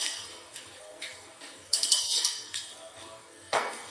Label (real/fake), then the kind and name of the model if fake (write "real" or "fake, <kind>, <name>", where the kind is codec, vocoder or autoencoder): fake, codec, SNAC